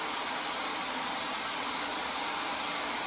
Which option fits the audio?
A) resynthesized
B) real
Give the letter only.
B